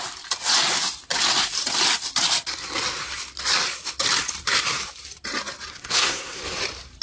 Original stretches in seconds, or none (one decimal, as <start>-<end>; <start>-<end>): 0.0-5.7; 6.4-7.0